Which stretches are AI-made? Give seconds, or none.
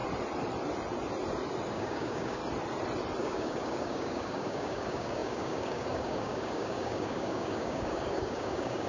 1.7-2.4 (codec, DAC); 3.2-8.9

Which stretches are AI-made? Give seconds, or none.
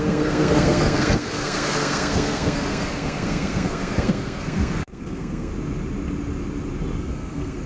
0.0-5.5 (codec, SNAC); 7.0-7.7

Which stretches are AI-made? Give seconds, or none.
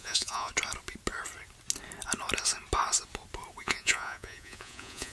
0.0-0.5 (vocoder, Vocos); 3.6-5.1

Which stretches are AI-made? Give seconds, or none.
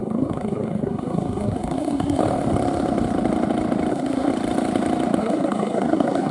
0.0-2.2 (codec, SNAC); 3.9-4.3; 5.2-6.3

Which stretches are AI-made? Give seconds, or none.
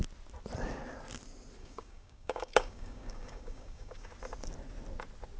1.6-4.1 (codec, DAC)